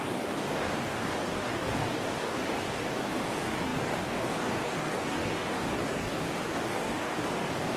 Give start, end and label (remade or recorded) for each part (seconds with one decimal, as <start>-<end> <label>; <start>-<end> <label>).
0.0-7.8 remade